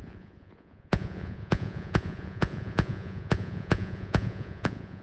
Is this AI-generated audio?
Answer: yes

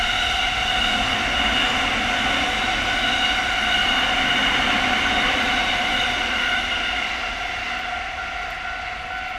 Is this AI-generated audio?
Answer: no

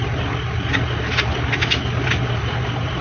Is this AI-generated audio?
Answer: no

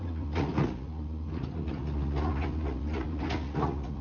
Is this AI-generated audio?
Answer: yes